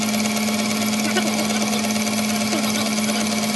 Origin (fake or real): real